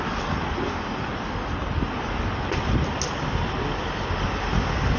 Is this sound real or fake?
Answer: real